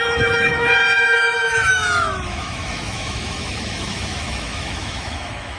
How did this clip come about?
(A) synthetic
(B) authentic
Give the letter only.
A